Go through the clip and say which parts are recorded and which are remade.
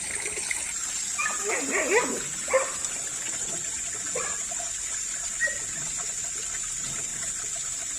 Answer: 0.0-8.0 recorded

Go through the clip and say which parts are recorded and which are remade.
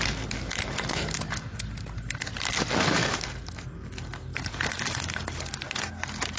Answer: 0.0-6.4 recorded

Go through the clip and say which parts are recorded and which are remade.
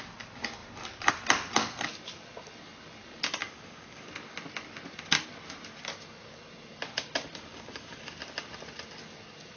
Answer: 0.0-3.4 recorded; 3.4-4.1 remade; 4.1-7.5 recorded; 7.5-8.1 remade; 8.1-9.6 recorded